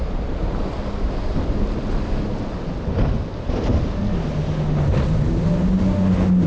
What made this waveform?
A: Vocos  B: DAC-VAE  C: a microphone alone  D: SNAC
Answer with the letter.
C